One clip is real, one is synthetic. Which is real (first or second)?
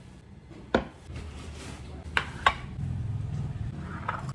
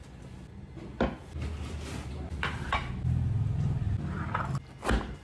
second